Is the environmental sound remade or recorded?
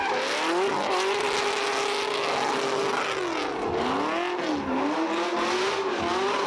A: recorded